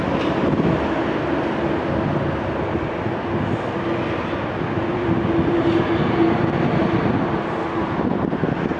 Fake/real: real